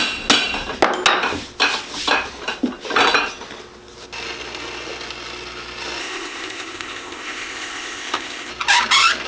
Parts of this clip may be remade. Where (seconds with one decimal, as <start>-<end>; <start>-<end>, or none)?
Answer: 6.0-8.5